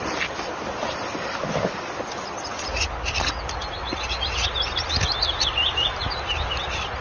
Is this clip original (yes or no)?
yes